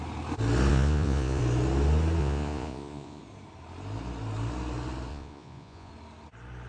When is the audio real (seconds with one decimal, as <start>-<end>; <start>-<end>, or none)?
0.0-0.7; 1.4-2.2; 3.2-5.1; 5.9-6.7